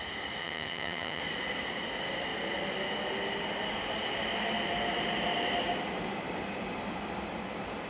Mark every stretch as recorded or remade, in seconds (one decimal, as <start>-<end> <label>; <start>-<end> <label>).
0.0-0.4 recorded; 0.4-1.2 remade; 1.2-7.9 recorded